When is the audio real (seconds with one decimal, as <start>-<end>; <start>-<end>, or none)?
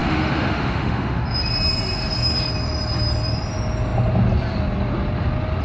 1.2-5.6